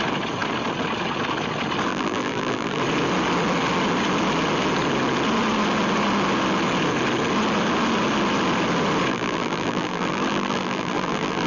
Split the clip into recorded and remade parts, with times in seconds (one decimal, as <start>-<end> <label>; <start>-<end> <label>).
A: 0.0-1.9 recorded; 1.9-2.8 remade; 2.8-9.1 recorded; 9.1-11.5 remade